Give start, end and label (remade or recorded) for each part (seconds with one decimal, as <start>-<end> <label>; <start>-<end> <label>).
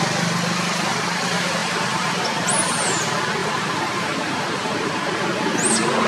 0.0-1.6 recorded; 1.6-2.1 remade; 2.1-3.4 recorded; 3.4-5.2 remade; 5.2-6.1 recorded